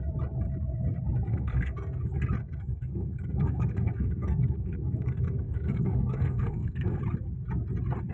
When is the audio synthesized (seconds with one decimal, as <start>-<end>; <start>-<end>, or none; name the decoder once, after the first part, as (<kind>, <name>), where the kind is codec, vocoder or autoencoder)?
1.3-2.0 (codec, SNAC); 2.4-7.0